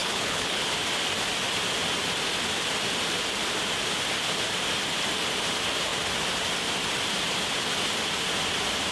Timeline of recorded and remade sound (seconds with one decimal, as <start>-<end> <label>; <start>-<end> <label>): 0.0-0.6 remade; 0.6-8.9 recorded